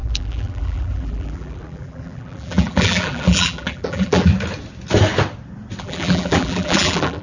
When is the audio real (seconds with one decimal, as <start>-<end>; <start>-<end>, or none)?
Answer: 4.3-5.8